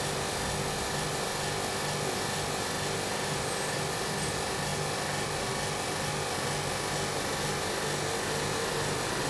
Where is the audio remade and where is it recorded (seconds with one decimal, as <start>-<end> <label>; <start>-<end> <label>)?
0.0-9.3 recorded